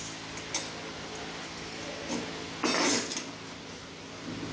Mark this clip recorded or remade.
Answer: recorded